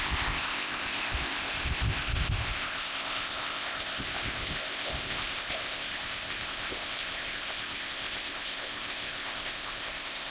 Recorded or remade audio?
remade